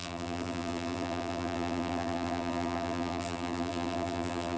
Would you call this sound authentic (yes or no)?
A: no